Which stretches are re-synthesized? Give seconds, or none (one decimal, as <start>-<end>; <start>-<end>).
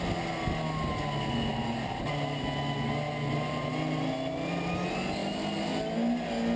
none